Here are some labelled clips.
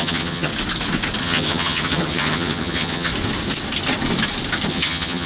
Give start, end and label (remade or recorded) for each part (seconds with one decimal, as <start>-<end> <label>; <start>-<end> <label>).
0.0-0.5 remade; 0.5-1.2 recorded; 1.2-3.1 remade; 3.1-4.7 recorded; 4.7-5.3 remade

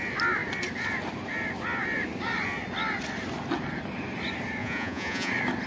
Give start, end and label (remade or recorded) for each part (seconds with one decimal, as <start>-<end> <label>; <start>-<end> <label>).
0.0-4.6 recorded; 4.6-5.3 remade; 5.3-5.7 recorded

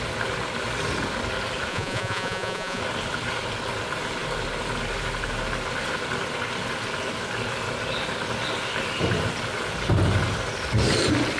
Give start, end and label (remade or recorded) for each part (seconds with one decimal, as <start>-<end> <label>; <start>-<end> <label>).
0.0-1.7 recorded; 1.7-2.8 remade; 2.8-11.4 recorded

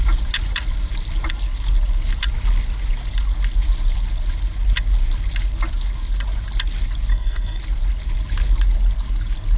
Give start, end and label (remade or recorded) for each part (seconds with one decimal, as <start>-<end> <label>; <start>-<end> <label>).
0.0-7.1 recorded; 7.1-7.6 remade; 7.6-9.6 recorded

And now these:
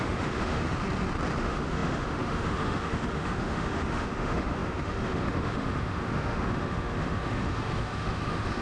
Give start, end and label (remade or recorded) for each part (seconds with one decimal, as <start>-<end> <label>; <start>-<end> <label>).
0.0-0.6 remade; 0.6-1.4 recorded; 1.4-8.6 remade

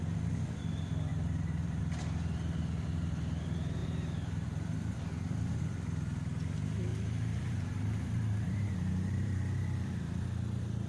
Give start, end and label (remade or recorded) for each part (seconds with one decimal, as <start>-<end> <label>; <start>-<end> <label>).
0.0-1.1 recorded; 1.1-1.8 remade; 1.8-3.8 recorded; 3.8-5.0 remade; 5.0-6.9 recorded; 6.9-10.0 remade; 10.0-10.9 recorded

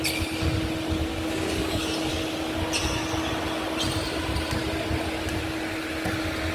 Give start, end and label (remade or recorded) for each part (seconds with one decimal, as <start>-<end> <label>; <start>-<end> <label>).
0.0-1.1 recorded; 1.1-2.1 remade; 2.1-6.5 recorded